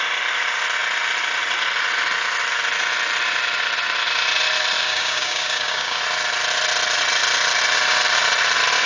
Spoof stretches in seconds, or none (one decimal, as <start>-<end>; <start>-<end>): 4.8-6.0

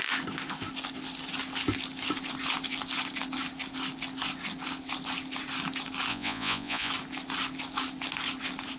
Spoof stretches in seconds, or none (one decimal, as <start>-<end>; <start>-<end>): 6.1-6.9

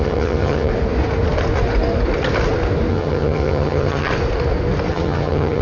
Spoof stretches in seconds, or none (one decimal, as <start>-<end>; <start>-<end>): 0.0-0.7; 2.9-4.1; 4.9-5.6

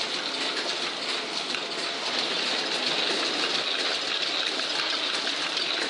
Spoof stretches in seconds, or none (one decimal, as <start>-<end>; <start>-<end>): none

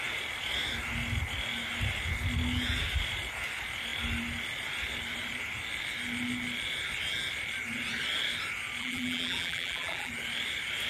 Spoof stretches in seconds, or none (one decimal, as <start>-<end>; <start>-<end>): 8.8-10.1

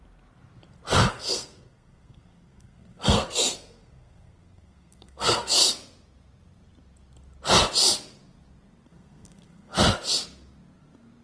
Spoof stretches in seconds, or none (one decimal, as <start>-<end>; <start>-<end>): 1.1-5.7; 8.9-9.8